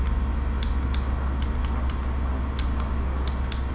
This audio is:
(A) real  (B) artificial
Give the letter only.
A